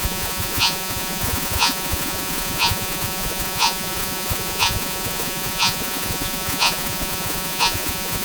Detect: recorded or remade remade